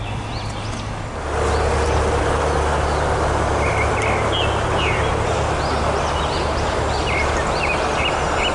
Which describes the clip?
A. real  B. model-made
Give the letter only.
A